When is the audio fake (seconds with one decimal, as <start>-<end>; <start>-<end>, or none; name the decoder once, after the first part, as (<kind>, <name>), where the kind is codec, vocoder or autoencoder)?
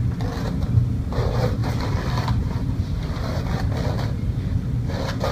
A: 1.6-4.1 (vocoder, BigVGAN v2)